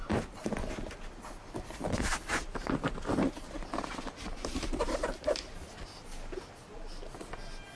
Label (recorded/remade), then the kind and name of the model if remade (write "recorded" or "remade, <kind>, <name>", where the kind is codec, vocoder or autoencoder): recorded